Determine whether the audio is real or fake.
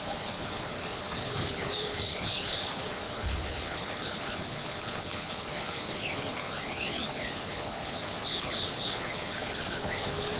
fake